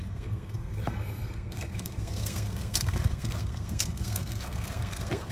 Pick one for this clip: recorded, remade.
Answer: remade